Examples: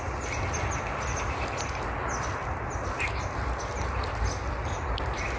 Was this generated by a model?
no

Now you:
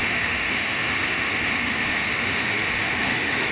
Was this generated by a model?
yes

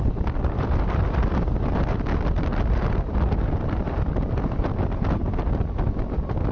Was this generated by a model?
no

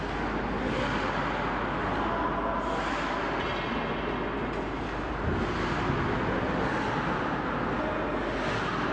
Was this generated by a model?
no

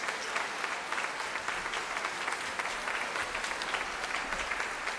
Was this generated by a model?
no